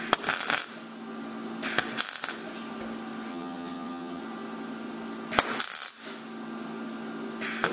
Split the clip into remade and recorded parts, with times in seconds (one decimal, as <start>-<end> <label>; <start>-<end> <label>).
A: 0.0-3.3 recorded; 3.3-4.2 remade; 4.2-7.7 recorded